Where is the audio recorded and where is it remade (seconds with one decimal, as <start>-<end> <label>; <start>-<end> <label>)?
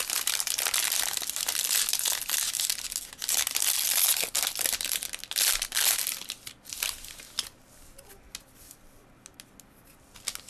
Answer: 0.0-10.5 recorded